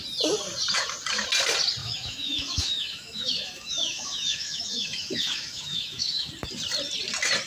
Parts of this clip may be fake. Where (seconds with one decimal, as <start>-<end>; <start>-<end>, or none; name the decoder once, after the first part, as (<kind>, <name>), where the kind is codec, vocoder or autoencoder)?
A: 1.8-6.3 (autoencoder, DAC-VAE)

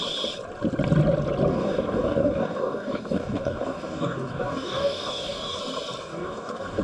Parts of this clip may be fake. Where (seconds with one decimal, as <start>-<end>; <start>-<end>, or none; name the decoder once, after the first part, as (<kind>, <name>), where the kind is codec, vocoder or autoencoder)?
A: 1.5-5.6 (codec, DAC); 6.1-6.8